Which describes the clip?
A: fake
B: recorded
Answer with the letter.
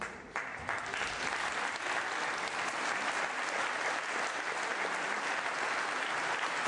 B